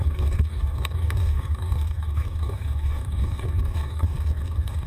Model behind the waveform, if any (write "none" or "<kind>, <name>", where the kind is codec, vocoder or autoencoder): codec, DAC